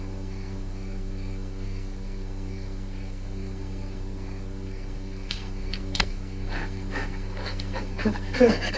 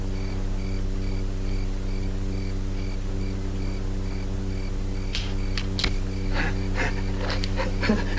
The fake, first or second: first